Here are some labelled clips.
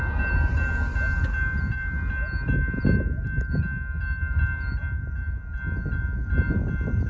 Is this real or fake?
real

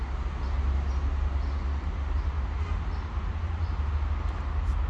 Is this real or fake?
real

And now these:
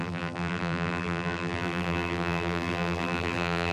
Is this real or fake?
fake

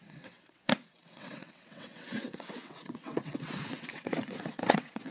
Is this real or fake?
fake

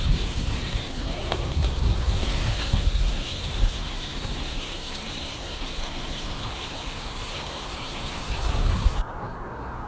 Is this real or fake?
fake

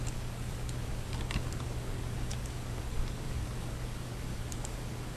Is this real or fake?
fake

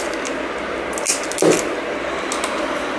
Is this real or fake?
real